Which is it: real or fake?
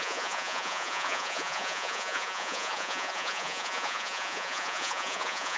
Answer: fake